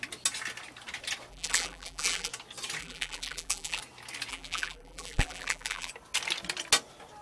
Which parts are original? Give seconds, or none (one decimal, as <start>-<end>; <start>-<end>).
0.0-1.3; 2.3-2.8; 3.8-4.3; 5.9-7.2